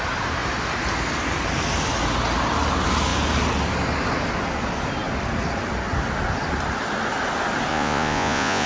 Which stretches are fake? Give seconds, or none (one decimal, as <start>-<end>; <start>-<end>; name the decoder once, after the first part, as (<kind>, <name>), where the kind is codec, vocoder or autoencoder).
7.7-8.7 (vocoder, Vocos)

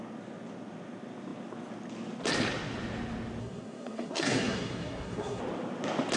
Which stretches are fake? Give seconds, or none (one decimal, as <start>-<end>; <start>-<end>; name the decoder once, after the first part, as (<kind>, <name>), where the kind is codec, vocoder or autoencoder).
3.4-5.4 (codec, SNAC)

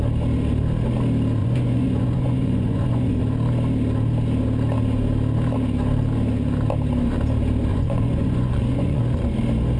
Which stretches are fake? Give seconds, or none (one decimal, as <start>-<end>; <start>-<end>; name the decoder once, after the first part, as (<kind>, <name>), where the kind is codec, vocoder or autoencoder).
1.4-3.2 (vocoder, Vocos); 7.7-9.0